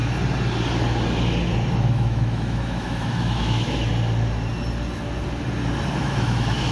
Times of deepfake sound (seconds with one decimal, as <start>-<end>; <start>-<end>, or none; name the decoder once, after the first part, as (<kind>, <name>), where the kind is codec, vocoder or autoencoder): 1.8-3.9 (autoencoder, DAC-VAE); 6.0-6.7